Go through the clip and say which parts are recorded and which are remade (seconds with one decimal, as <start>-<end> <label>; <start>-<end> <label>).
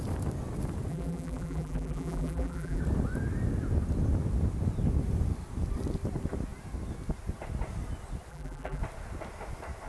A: 0.0-0.9 recorded; 0.9-2.8 remade; 2.8-8.3 recorded; 8.3-8.8 remade; 8.8-9.9 recorded